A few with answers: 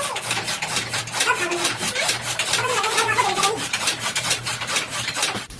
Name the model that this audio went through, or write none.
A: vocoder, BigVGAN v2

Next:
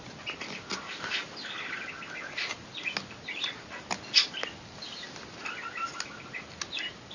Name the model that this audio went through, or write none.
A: none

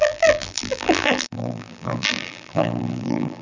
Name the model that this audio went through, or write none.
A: vocoder, BigVGAN v2